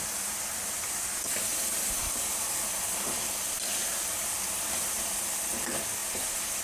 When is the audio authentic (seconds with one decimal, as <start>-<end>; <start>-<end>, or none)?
0.0-1.5; 4.1-6.0